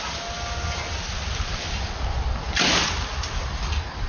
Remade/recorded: recorded